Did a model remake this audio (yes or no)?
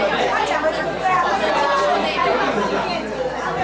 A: no